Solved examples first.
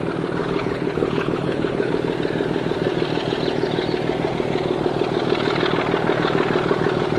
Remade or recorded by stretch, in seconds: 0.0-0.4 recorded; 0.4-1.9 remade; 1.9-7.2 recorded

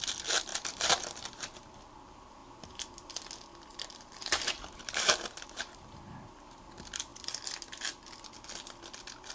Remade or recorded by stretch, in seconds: 0.0-0.5 recorded; 0.5-1.8 remade; 1.8-2.4 recorded; 2.4-3.1 remade; 3.1-3.7 recorded; 3.7-6.0 remade; 6.0-9.3 recorded

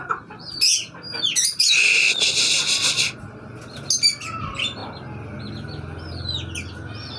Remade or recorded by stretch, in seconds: 0.0-7.2 recorded

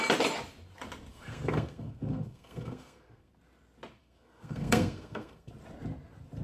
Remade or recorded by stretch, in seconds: 0.0-1.1 recorded; 1.1-3.3 remade; 3.3-4.0 recorded; 4.0-5.5 remade; 5.5-6.4 recorded

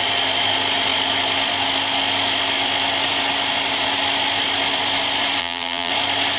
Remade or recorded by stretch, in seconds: 0.0-5.4 recorded; 5.4-5.9 remade; 5.9-6.4 recorded